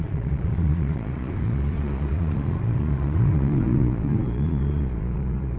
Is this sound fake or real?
fake